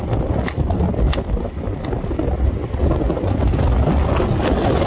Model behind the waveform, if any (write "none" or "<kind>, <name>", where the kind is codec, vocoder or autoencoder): none